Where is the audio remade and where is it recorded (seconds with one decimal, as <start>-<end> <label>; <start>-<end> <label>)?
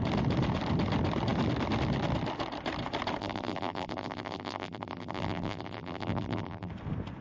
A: 0.0-3.2 recorded; 3.2-6.7 remade; 6.7-7.2 recorded